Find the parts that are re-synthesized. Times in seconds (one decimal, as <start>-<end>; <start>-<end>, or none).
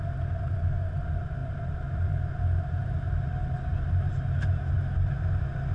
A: none